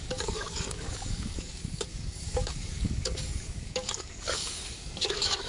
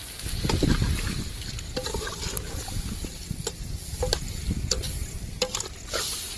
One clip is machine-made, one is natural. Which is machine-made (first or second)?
first